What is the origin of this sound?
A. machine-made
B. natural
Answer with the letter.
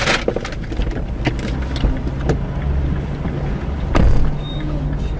B